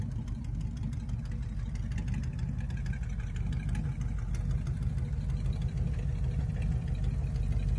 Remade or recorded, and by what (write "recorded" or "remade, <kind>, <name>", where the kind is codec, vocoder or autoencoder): recorded